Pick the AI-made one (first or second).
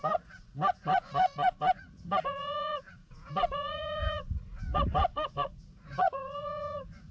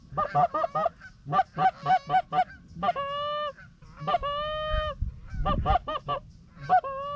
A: first